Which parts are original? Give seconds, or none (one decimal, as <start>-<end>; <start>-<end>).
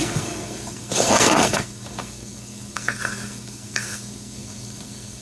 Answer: none